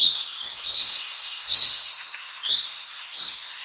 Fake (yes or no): yes